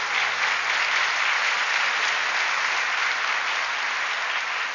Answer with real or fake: real